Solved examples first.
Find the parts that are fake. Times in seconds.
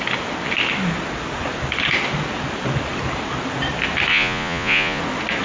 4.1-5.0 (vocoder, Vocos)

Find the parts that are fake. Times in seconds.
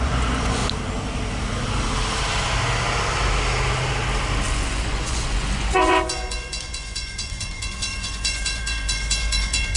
0.0-0.6 (vocoder, Vocos); 4.5-9.8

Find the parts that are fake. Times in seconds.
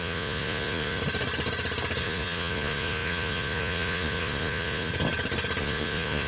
0.0-1.0 (vocoder, Vocos); 2.0-4.9; 5.6-6.3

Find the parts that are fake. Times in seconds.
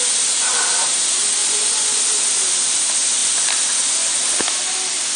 1.4-2.0 (vocoder, Vocos)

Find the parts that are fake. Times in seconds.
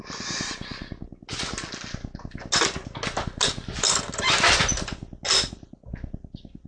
none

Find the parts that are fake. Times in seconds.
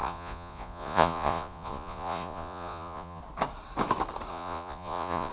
0.0-3.2 (vocoder, Vocos); 4.3-5.3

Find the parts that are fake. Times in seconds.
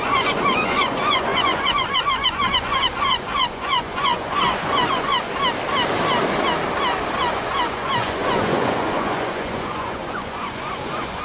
0.0-5.3 (vocoder, Vocos); 7.2-11.2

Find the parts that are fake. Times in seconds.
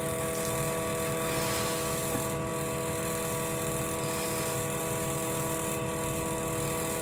none